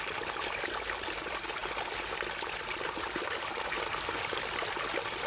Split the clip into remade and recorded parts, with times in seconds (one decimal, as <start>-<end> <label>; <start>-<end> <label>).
0.0-5.3 recorded